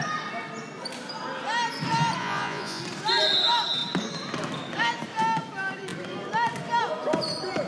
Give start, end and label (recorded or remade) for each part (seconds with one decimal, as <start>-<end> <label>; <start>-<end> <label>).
0.0-2.2 recorded; 2.2-2.8 remade; 2.8-7.7 recorded